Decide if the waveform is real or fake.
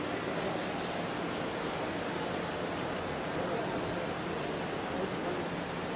real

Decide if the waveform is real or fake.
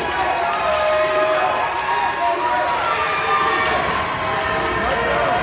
real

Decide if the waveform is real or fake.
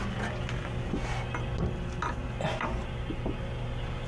real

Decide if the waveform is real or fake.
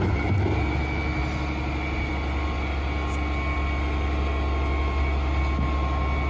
real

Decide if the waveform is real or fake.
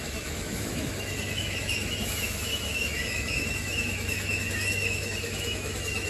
fake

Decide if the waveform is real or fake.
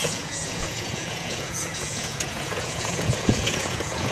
fake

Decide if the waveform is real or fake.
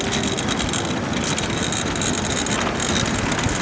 real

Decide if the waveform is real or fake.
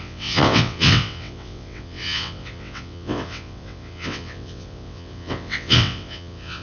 fake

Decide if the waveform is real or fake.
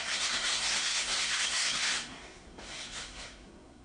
fake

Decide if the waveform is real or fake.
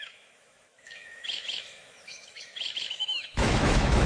fake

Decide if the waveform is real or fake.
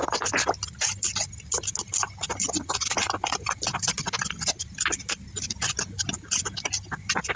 real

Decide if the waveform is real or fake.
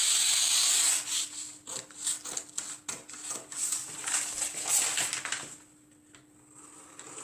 real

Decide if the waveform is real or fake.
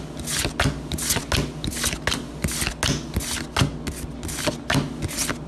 real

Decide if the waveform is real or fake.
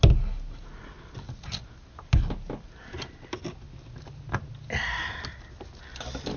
real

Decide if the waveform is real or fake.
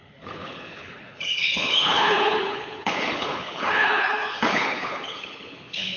fake